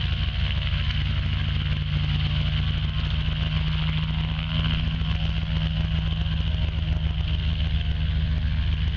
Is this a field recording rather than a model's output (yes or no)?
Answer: yes